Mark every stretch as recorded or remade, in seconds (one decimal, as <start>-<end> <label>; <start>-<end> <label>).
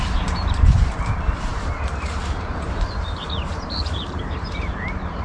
0.0-5.2 remade